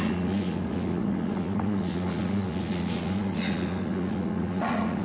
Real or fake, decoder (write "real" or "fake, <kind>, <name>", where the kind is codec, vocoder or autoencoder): fake, vocoder, Vocos